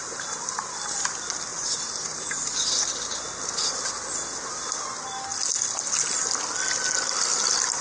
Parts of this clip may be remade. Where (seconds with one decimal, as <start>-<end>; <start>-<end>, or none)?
0.0-0.6; 1.5-2.4